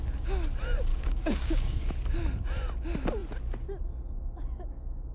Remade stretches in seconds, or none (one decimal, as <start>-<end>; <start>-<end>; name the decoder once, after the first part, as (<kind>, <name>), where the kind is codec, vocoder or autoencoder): 0.9-1.9 (codec, DAC)